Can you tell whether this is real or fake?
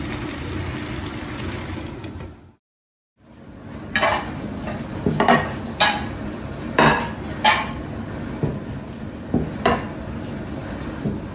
real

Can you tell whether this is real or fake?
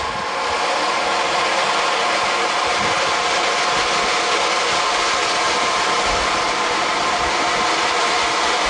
real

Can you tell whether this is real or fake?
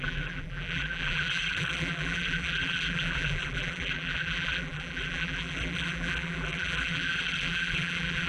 fake